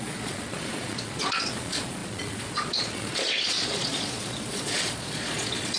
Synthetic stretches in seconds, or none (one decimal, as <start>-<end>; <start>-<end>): 0.0-5.8